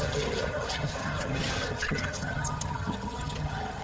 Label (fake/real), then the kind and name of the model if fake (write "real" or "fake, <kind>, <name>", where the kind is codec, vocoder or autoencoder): fake, vocoder, HiFi-GAN